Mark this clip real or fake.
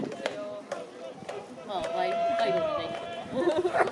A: real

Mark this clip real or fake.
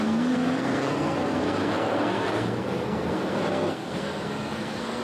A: fake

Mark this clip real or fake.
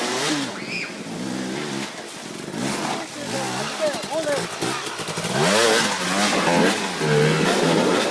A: real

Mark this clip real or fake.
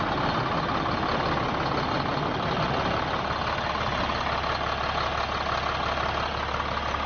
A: real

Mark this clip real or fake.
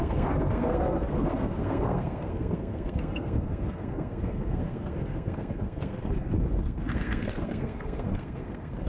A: fake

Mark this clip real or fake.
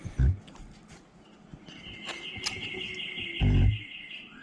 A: real